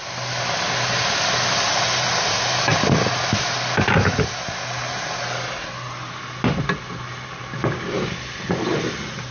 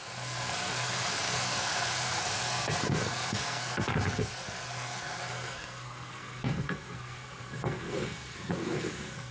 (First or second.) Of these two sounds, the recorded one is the first